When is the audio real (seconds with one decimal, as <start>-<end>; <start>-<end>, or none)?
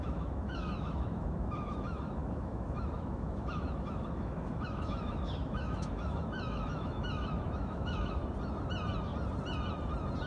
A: 8.2-10.3